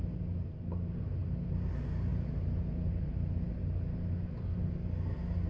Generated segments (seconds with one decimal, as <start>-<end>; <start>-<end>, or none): none